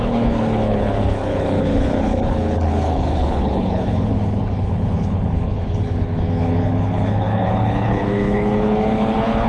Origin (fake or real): fake